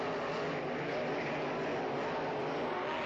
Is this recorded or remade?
recorded